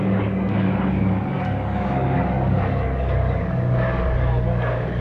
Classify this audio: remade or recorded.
remade